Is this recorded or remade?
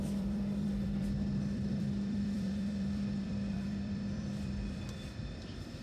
remade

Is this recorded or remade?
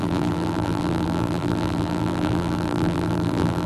remade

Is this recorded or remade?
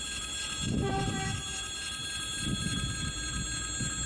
recorded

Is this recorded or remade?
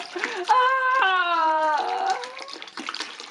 remade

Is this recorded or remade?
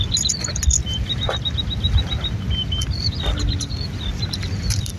recorded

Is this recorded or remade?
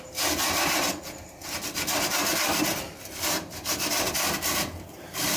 remade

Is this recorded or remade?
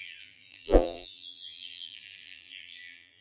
remade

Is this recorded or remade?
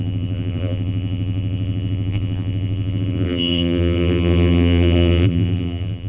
remade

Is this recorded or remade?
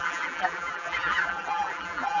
remade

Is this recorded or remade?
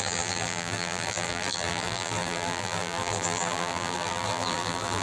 remade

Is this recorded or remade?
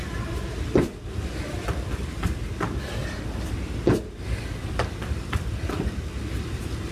recorded